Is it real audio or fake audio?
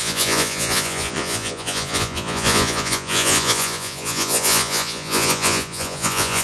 fake